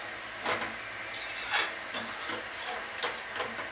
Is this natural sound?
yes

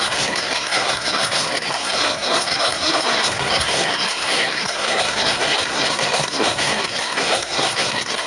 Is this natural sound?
no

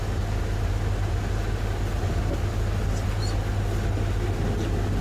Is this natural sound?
yes